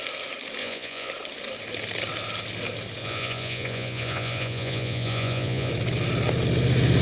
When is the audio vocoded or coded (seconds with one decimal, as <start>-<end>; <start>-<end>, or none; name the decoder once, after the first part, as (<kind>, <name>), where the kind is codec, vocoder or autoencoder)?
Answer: 0.6-1.1 (vocoder, Vocos); 3.0-5.7